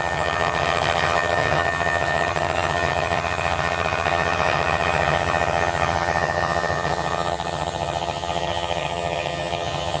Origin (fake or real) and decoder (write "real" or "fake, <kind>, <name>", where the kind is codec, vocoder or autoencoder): fake, vocoder, HiFi-GAN